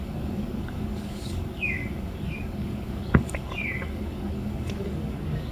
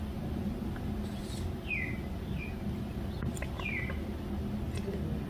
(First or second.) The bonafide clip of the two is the second